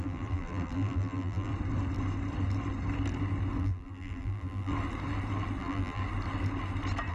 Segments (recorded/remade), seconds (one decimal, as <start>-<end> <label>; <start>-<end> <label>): 0.0-1.5 remade; 1.5-3.6 recorded; 3.6-4.7 remade; 4.7-5.6 recorded; 5.6-6.0 remade; 6.0-7.1 recorded